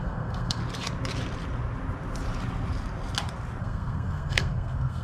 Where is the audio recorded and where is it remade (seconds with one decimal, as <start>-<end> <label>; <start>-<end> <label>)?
0.0-0.6 remade; 0.6-3.6 recorded; 3.6-5.0 remade